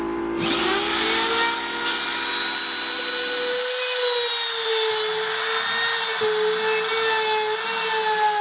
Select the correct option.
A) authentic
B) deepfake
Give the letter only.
A